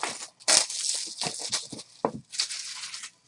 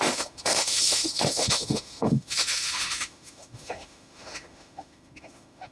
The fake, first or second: second